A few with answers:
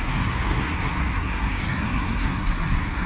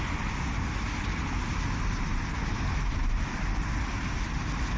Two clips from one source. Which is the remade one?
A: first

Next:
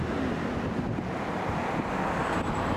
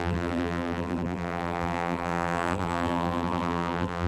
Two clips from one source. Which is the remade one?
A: second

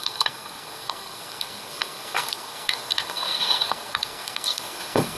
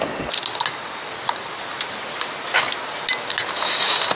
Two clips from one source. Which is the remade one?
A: first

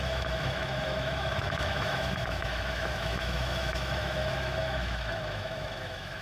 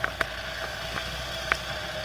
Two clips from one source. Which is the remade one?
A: first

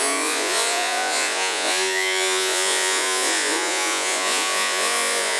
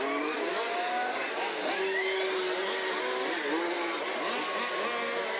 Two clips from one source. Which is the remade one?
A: first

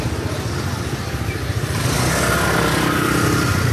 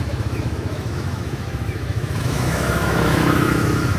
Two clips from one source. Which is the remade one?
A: second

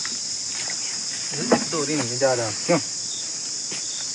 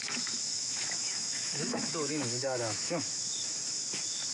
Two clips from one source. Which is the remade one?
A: second